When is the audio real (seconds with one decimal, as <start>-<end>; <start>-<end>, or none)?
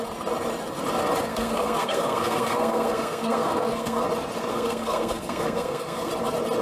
0.0-1.3; 4.0-4.5; 6.1-6.6